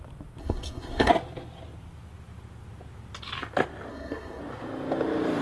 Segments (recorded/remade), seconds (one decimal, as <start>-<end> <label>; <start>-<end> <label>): 0.0-0.4 recorded; 0.4-1.1 remade; 1.1-3.9 recorded; 3.9-4.4 remade; 4.4-5.4 recorded